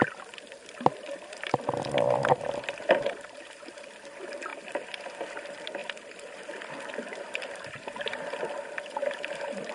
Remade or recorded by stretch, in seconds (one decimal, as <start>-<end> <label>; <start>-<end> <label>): 0.0-1.1 remade; 1.1-3.7 recorded; 3.7-4.5 remade; 4.5-5.2 recorded; 5.2-5.8 remade; 5.8-7.7 recorded; 7.7-9.7 remade